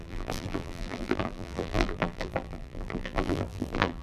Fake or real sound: fake